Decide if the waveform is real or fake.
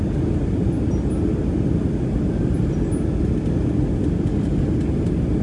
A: real